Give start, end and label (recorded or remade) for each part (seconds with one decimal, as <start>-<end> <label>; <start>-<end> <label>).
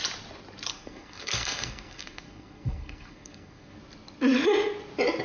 0.0-0.7 recorded; 0.7-3.8 remade; 3.8-5.2 recorded